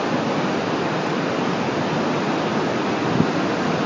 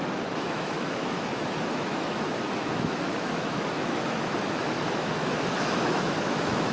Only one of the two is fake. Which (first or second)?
second